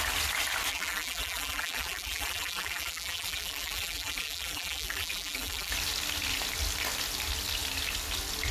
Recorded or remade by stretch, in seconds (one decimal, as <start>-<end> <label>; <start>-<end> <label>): 0.0-0.7 recorded; 0.7-5.7 remade; 5.7-8.5 recorded